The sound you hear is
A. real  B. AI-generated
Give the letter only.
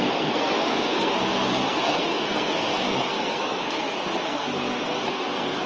B